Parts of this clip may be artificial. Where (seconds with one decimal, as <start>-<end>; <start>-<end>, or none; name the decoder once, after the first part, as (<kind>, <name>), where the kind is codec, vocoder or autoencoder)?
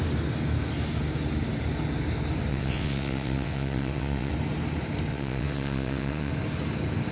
2.5-4.3 (vocoder, WaveNeXt); 5.1-6.3